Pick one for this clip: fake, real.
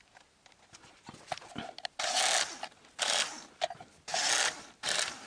real